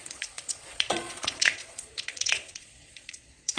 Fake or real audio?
fake